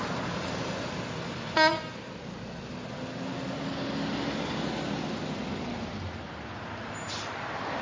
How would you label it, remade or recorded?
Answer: recorded